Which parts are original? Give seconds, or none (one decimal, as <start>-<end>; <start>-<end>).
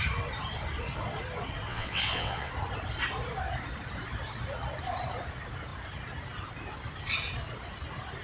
0.0-1.7; 2.5-8.2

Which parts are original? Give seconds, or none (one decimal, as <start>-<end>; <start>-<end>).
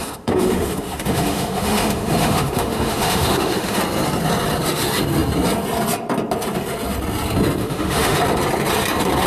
3.8-7.6; 8.2-9.3